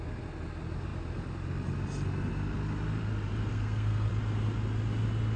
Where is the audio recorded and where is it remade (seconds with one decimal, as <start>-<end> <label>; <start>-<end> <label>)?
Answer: 0.0-3.5 recorded; 3.5-4.1 remade; 4.1-5.4 recorded